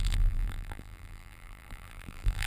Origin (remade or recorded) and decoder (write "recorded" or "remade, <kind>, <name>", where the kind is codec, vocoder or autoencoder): remade, vocoder, BigVGAN v2